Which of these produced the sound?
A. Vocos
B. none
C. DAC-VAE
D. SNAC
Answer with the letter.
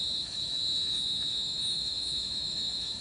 C